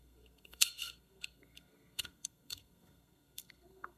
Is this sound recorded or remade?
remade